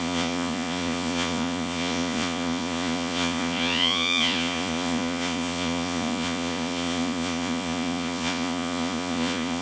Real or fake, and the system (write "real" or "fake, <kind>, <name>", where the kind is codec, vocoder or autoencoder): fake, vocoder, Vocos